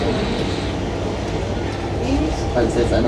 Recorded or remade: recorded